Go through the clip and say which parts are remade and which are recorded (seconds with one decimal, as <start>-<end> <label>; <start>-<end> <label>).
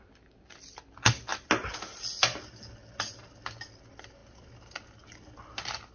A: 0.0-5.9 recorded